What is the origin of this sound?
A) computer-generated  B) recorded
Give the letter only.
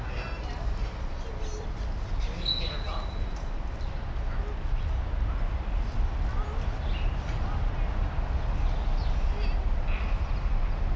B